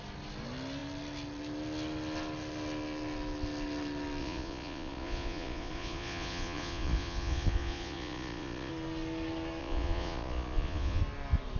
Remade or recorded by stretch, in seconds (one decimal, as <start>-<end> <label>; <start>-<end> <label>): 0.0-4.2 recorded; 4.2-8.7 remade; 8.7-9.6 recorded; 9.6-11.0 remade; 11.0-11.6 recorded